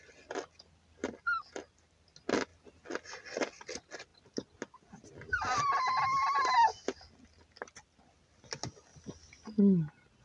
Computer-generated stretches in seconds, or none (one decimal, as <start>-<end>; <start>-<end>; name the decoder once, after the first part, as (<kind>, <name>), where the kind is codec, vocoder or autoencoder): none